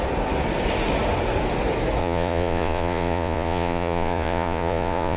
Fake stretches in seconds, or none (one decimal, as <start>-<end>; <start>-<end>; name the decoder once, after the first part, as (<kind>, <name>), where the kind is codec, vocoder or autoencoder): 2.0-5.2 (vocoder, Vocos)